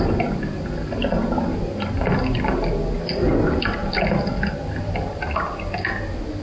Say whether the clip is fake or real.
real